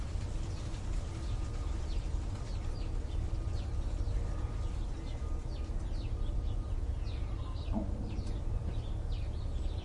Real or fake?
real